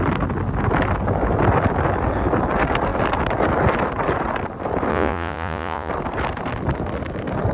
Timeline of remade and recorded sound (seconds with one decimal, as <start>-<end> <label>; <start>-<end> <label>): 0.0-4.9 recorded; 4.9-5.9 remade; 5.9-7.5 recorded